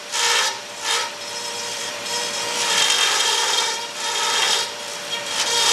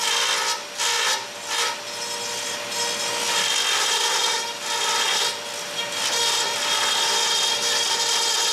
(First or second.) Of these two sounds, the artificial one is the first